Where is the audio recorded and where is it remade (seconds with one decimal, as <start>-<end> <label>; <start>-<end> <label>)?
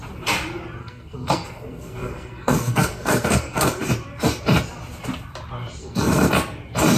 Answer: 0.0-0.8 recorded; 0.8-3.8 remade; 3.8-5.8 recorded; 5.8-6.3 remade; 6.3-7.0 recorded